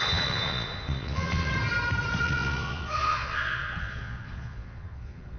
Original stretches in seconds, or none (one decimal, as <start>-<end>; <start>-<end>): 1.5-2.2

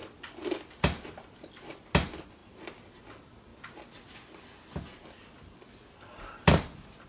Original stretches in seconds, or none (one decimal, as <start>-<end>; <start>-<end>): 0.0-7.1

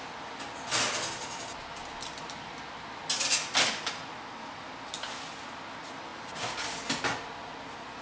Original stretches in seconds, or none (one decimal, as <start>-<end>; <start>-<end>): 0.0-8.0

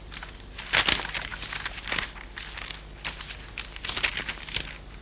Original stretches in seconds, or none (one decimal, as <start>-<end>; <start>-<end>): 0.0-5.0